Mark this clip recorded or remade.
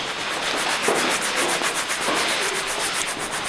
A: recorded